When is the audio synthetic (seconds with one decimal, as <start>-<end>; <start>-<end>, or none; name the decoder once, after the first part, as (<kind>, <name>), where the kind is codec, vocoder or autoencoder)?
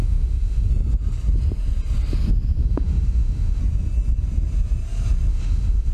0.0-0.7 (autoencoder, DAC-VAE); 2.6-3.6; 5.3-5.9